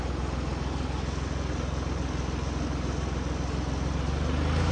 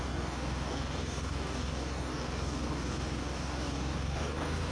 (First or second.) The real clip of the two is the first